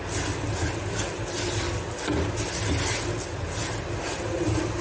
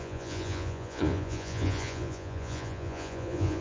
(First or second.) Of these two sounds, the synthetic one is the second